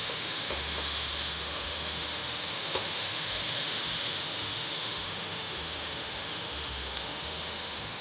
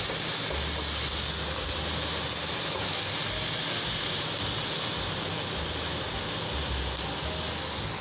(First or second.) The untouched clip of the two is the second